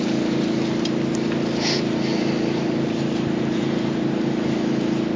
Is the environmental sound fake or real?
real